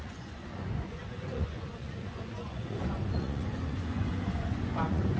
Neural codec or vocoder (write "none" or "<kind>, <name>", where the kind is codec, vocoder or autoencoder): vocoder, Vocos